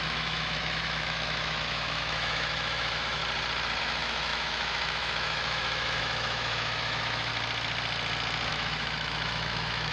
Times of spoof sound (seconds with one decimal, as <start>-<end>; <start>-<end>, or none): 0.0-3.2; 3.8-7.3; 8.5-9.9